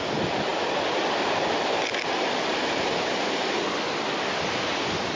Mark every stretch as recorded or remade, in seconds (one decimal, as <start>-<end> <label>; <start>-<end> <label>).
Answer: 0.0-5.2 recorded